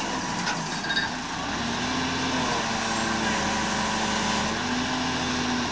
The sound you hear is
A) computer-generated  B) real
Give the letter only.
B